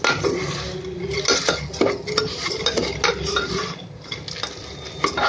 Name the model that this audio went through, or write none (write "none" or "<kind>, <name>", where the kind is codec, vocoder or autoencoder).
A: none